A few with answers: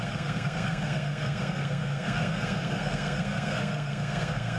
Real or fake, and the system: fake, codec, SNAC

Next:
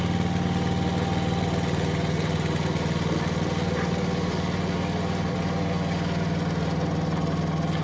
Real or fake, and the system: real